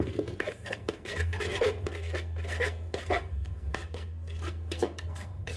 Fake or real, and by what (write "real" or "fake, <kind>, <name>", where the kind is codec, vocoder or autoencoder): fake, codec, SNAC